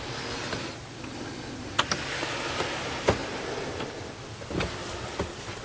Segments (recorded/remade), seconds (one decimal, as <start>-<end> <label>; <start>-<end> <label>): 0.0-5.6 recorded